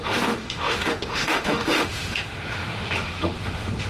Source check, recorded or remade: remade